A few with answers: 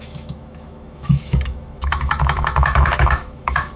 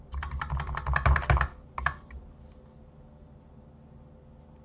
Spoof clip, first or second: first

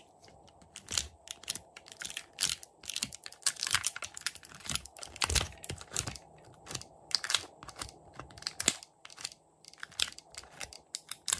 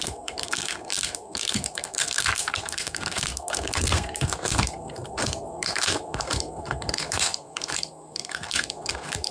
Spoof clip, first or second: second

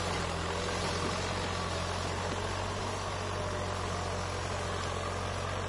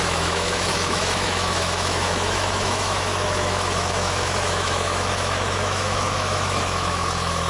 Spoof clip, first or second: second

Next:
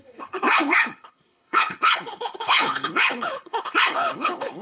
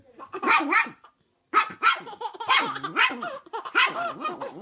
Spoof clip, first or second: first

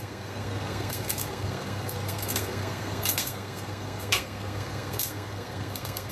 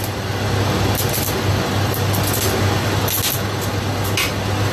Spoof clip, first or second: first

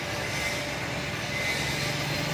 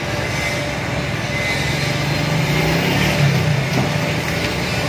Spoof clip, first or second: first